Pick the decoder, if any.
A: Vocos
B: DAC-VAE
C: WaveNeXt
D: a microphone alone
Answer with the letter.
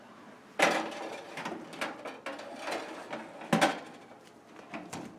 D